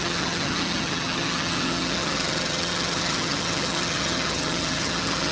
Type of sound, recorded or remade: remade